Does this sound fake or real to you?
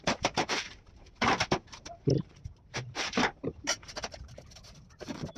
fake